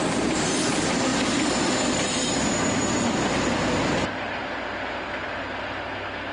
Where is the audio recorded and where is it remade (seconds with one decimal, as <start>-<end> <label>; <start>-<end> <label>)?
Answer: 0.0-6.3 recorded